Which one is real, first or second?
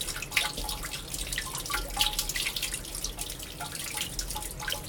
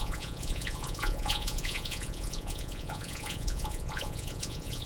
first